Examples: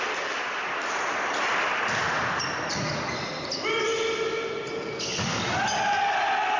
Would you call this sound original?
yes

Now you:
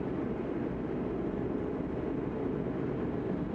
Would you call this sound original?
yes